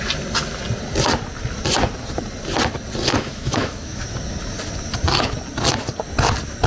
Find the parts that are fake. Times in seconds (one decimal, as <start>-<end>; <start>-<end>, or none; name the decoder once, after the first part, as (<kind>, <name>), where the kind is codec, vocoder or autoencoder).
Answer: 3.1-4.0 (autoencoder, DAC-VAE)